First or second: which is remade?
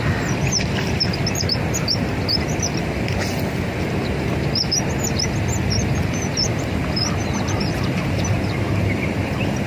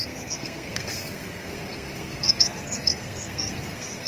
second